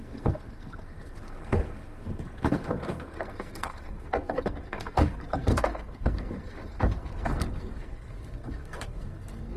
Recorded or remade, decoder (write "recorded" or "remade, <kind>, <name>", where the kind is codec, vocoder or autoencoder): remade, codec, SNAC